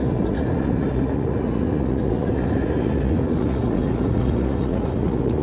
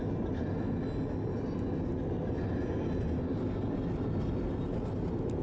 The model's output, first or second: first